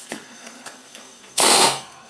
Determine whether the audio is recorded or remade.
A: remade